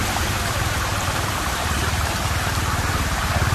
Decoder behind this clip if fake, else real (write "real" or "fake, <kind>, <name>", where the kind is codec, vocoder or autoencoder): fake, vocoder, BigVGAN v2